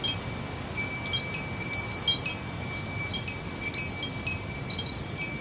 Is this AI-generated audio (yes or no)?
no